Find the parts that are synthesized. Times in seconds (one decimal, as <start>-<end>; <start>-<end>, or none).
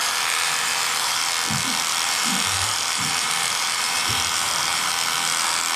0.0-1.3; 1.9-4.9